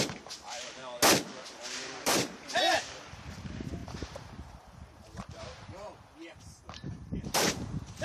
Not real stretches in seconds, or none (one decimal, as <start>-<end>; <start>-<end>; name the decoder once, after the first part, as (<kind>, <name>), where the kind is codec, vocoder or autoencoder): 0.0-0.8 (vocoder, BigVGAN v2); 1.6-8.0